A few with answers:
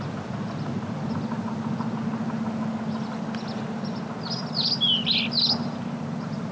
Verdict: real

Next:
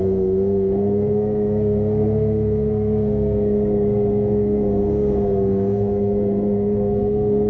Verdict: fake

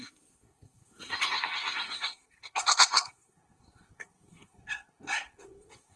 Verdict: fake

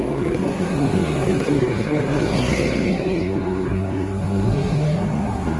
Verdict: fake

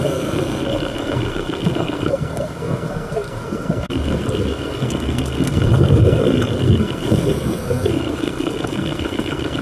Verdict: fake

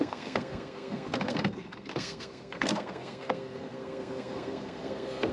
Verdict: fake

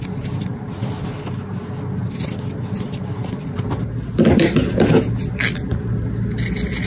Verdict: real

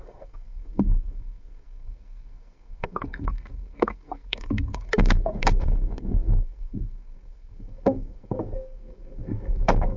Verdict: fake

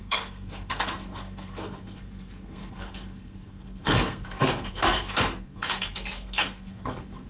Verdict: fake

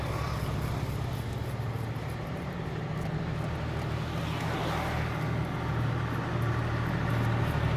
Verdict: real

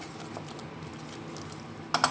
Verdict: real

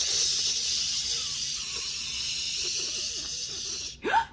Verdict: real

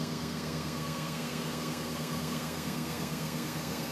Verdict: fake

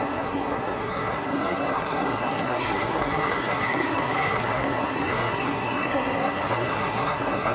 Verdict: fake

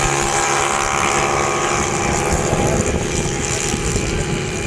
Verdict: real